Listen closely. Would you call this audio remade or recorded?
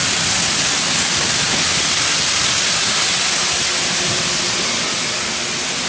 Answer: recorded